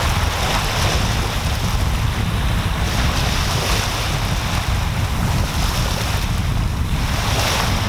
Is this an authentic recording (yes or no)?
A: yes